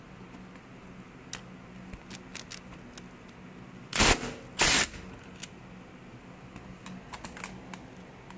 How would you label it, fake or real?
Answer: real